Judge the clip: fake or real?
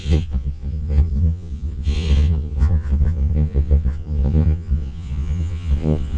fake